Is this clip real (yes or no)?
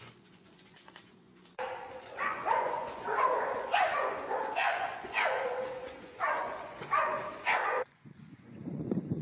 no